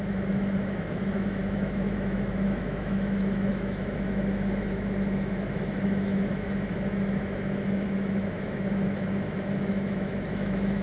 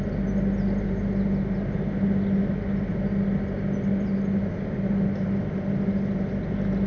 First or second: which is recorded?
second